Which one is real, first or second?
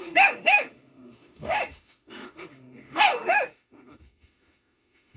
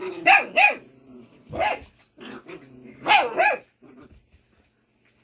second